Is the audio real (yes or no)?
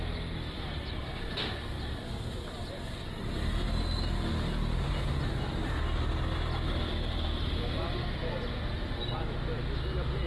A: yes